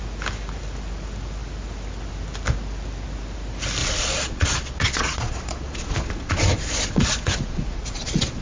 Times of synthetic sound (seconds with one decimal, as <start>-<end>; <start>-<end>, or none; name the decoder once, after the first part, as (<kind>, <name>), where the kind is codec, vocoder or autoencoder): 3.8-8.4 (vocoder, Vocos)